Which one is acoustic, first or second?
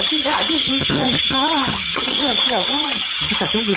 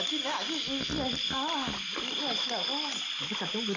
second